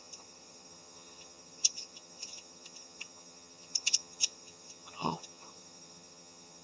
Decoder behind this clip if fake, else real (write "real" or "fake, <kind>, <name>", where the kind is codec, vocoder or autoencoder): fake, vocoder, HiFi-GAN